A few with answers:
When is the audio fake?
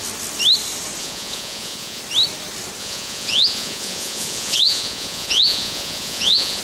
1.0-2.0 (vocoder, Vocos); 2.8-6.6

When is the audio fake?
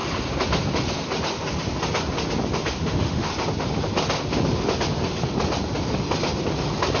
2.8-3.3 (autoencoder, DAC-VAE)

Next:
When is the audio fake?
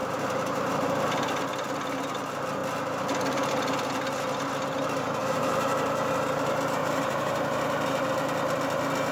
0.0-1.3 (vocoder, BigVGAN v2); 5.2-6.1; 6.8-8.1